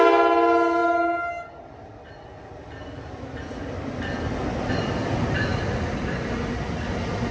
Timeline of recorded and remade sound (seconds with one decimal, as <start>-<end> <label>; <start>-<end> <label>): 0.0-7.3 recorded